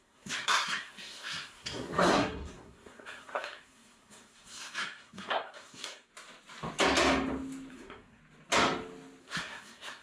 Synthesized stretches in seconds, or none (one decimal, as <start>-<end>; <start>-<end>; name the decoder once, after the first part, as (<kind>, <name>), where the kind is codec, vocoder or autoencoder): 0.0-6.1 (codec, SNAC); 7.7-8.2; 9.2-10.0